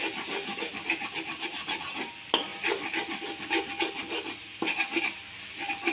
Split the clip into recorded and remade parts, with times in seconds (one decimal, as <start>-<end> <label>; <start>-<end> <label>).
0.0-5.9 recorded